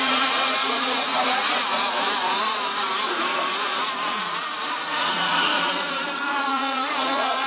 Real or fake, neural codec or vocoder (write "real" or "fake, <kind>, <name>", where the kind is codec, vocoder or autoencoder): fake, vocoder, Vocos